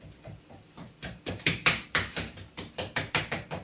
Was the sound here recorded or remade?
remade